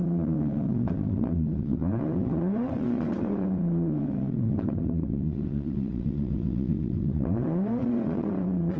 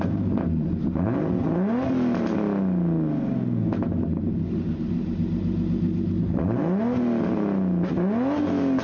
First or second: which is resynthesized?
first